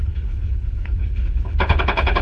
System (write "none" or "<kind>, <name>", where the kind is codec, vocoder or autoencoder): codec, HILCodec